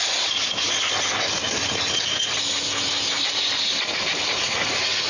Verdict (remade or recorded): recorded